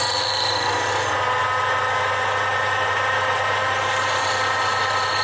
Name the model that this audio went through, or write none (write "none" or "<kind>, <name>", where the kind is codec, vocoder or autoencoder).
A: none